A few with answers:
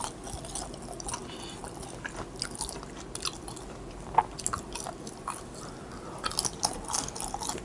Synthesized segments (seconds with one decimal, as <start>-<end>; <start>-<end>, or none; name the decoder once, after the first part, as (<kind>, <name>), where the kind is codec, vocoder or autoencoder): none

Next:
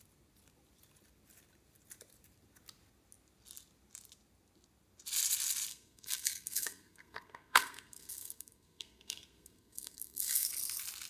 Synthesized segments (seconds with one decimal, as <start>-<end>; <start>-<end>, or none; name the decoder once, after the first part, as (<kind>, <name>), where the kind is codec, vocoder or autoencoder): 5.7-10.5 (codec, SNAC)

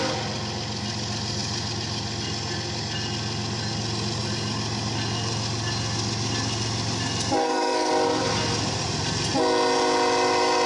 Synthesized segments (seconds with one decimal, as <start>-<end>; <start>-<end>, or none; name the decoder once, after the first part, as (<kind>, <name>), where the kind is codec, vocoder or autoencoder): 7.4-7.9 (codec, SNAC)